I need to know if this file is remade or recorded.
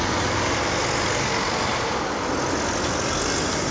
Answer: recorded